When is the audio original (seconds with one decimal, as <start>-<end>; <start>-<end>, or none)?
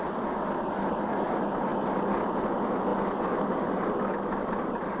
0.0-5.0